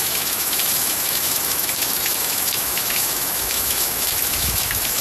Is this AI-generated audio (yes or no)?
yes